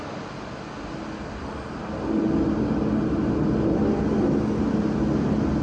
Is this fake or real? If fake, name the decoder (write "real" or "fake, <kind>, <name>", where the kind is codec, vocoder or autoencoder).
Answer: real